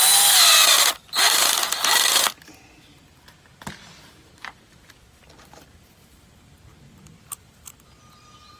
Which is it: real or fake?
real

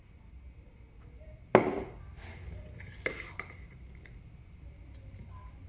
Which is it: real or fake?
real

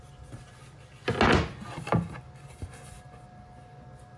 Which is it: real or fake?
real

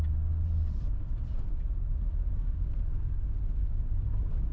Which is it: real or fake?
real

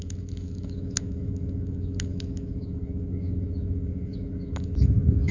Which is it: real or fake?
fake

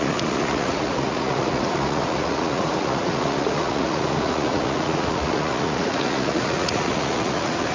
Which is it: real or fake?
fake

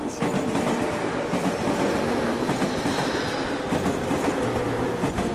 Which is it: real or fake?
real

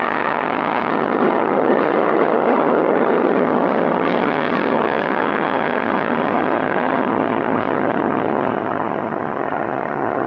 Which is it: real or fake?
fake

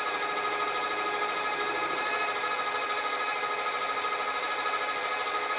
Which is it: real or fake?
real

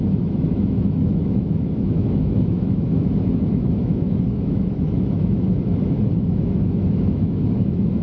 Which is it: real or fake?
fake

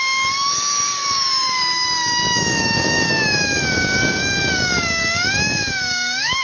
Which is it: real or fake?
fake